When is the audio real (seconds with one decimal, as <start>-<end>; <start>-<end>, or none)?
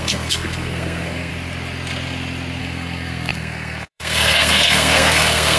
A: 1.3-2.6